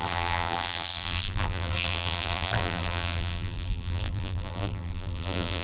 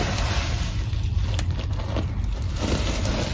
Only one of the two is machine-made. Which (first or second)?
first